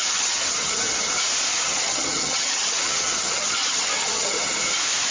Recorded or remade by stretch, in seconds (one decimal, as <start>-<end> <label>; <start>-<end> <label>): 0.0-1.1 remade; 1.1-1.5 recorded; 1.5-4.6 remade; 4.6-5.1 recorded

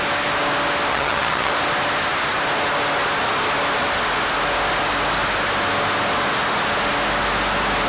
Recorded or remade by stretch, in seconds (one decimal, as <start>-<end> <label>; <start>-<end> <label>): 0.0-0.9 recorded; 0.9-1.5 remade; 1.5-7.9 recorded

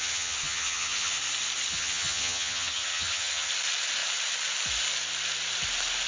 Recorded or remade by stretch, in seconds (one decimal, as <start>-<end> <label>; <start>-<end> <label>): 0.0-1.2 remade; 1.2-1.7 recorded; 1.7-3.5 remade; 3.5-6.1 recorded

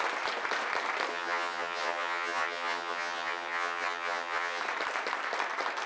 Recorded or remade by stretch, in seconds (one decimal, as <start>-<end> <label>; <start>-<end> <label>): 0.0-1.1 recorded; 1.1-4.6 remade; 4.6-5.9 recorded

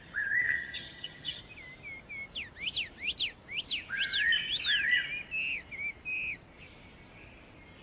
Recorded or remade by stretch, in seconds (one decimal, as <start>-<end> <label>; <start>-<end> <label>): 0.0-0.4 recorded; 0.4-1.4 remade; 1.4-7.8 recorded